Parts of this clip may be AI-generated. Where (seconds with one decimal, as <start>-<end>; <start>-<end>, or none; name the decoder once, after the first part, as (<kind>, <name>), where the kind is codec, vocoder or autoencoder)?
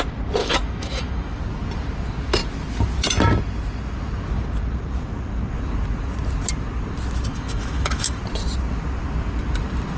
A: 0.4-1.4 (autoencoder, DAC-VAE); 7.3-8.2